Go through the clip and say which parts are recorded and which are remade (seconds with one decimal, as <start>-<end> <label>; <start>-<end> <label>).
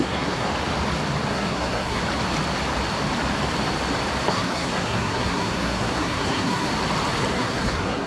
0.0-0.5 remade; 0.5-1.3 recorded; 1.3-2.0 remade; 2.0-4.3 recorded; 4.3-6.7 remade; 6.7-7.3 recorded; 7.3-8.1 remade